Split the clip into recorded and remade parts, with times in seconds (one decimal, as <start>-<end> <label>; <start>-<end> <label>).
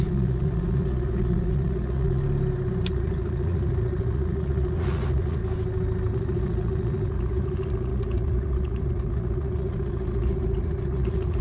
0.0-2.2 remade; 2.2-2.9 recorded; 2.9-5.4 remade; 5.4-6.1 recorded; 6.1-11.4 remade